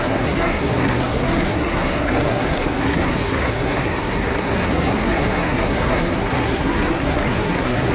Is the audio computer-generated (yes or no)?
yes